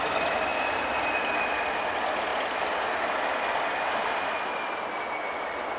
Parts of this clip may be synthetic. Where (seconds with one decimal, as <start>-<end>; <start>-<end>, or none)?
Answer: none